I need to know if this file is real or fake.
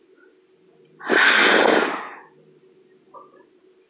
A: real